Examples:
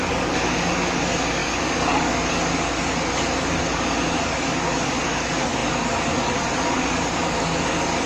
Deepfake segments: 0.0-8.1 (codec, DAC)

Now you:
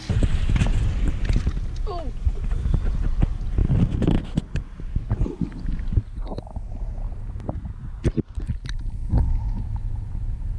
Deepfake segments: none

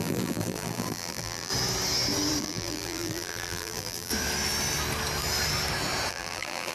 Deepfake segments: 0.0-1.5 (vocoder, BigVGAN v2); 2.4-4.1; 6.1-6.7